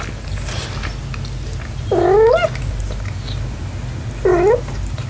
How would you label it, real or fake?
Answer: real